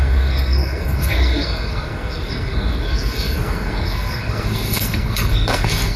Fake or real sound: fake